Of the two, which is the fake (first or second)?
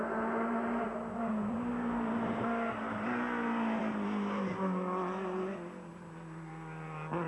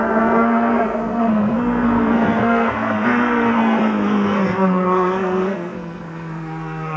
second